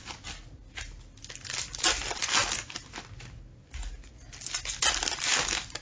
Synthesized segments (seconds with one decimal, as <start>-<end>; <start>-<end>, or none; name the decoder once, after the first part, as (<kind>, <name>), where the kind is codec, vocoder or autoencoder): none